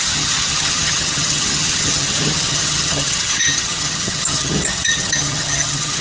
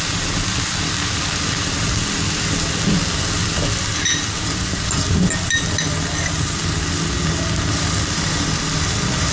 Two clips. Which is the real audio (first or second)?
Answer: second